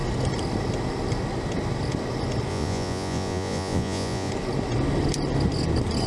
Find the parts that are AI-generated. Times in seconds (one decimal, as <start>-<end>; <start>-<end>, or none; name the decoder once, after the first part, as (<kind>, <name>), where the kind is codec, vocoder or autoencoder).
2.5-4.3 (vocoder, Vocos)